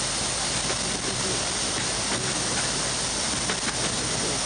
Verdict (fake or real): real